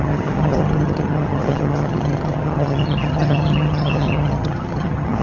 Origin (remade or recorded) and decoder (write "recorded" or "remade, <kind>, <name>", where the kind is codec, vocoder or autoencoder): remade, vocoder, HiFi-GAN